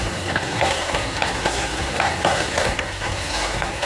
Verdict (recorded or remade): remade